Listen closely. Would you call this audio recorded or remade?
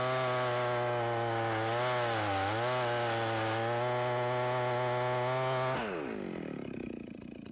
recorded